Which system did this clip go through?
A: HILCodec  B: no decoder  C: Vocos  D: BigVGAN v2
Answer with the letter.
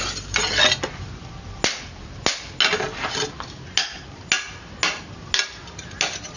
B